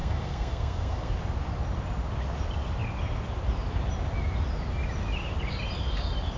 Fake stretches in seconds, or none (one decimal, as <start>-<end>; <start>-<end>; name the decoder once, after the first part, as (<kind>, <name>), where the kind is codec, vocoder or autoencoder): 0.0-1.1 (codec, SNAC)